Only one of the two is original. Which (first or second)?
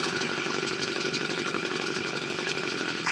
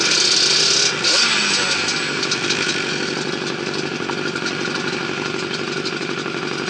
second